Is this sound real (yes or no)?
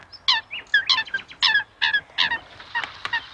yes